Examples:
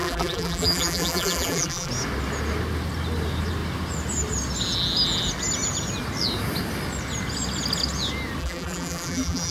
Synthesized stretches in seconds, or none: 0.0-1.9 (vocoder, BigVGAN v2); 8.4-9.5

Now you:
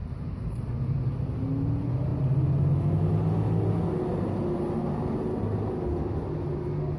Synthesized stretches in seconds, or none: none